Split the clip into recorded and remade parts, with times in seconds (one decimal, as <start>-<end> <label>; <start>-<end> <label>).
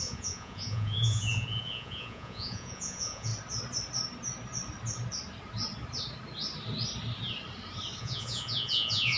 0.0-3.3 remade; 3.3-8.0 recorded; 8.0-9.2 remade